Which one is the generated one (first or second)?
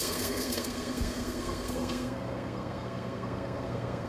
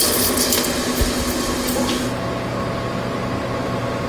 first